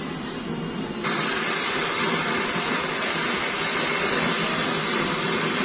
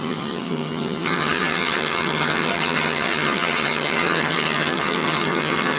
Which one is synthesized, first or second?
second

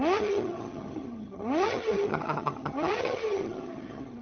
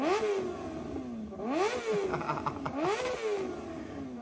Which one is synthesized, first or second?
first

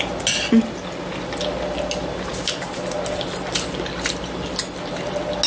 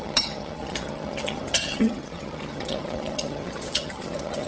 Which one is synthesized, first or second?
second